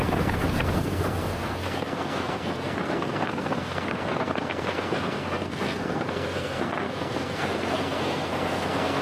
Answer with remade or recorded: remade